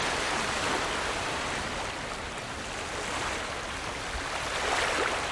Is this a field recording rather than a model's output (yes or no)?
yes